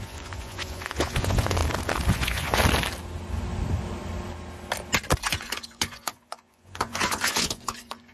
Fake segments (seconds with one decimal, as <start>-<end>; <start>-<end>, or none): 0.0-1.6; 2.1-2.6; 5.2-8.1